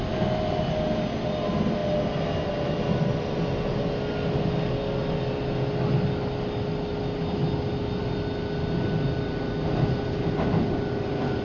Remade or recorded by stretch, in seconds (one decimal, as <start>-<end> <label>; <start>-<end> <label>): 0.0-11.4 recorded